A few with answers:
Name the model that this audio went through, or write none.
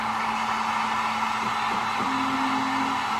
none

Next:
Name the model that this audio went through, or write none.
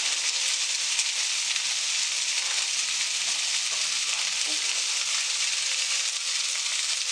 none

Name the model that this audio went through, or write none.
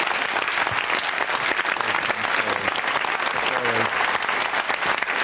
none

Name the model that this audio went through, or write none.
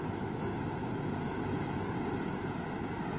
none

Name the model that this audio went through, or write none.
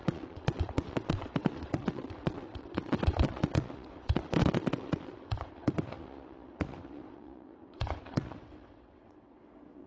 vocoder, WaveNeXt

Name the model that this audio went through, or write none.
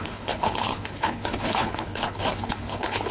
codec, HILCodec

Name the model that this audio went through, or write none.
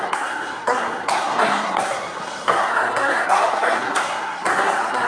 codec, SNAC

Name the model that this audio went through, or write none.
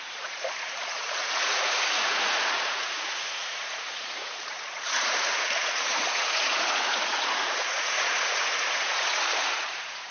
vocoder, Vocos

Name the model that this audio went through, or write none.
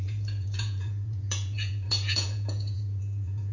vocoder, Vocos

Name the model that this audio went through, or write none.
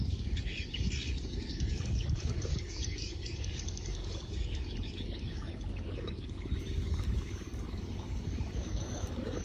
codec, DAC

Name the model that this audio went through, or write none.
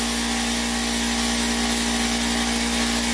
none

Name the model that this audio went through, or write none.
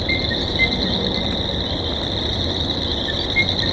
none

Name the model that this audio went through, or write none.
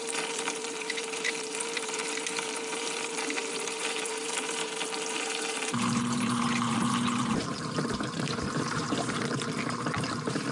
vocoder, BigVGAN v2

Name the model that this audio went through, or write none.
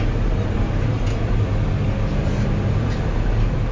none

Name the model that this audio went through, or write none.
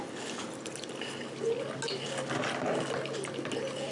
none